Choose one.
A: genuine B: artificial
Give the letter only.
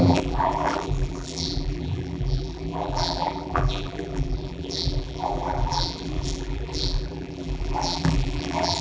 B